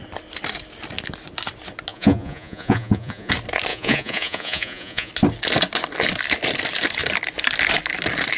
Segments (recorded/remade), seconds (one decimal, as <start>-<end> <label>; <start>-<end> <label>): 0.0-1.9 recorded; 1.9-3.3 remade; 3.3-3.7 recorded; 3.7-5.1 remade; 5.1-8.4 recorded